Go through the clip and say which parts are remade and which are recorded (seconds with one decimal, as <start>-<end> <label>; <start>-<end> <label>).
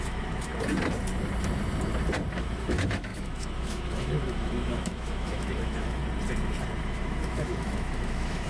0.0-0.5 remade; 0.5-2.3 recorded; 2.3-6.0 remade; 6.0-6.8 recorded; 6.8-8.5 remade